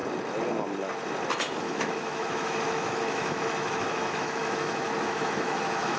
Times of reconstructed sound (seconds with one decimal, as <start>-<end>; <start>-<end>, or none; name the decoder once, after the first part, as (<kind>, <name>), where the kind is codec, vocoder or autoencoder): 1.6-6.0 (autoencoder, DAC-VAE)